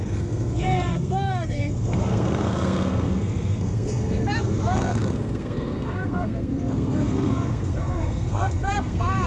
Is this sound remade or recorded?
remade